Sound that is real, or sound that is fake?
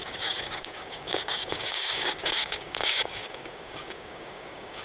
fake